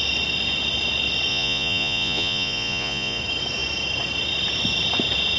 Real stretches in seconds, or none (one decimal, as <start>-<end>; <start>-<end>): 0.0-1.3; 3.2-5.4